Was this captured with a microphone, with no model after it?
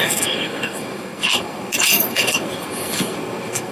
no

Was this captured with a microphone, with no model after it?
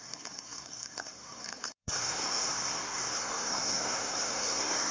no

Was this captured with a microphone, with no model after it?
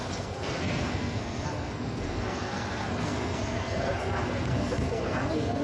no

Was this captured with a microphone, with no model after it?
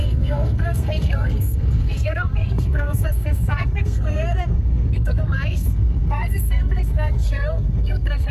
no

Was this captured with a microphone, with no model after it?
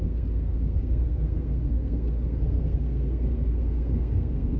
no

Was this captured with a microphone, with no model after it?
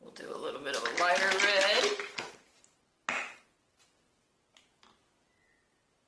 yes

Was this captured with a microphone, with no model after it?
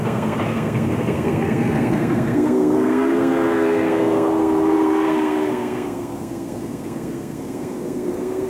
no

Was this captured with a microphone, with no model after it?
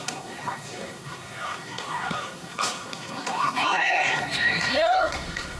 no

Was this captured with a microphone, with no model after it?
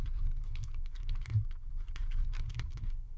no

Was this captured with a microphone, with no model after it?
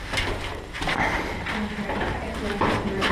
yes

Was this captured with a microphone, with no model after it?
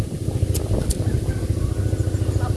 yes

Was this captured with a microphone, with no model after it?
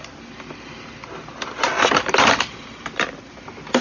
yes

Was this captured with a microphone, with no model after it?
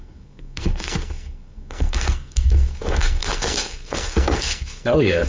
no